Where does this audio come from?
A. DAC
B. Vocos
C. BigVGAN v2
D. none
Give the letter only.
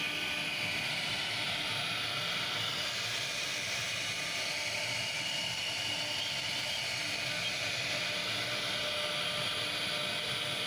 D